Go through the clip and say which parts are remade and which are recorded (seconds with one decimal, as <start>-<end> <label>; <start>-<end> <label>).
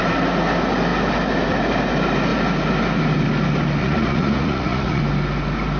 0.0-3.8 recorded; 3.8-5.0 remade; 5.0-5.8 recorded